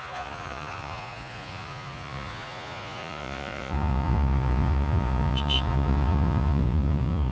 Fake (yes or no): yes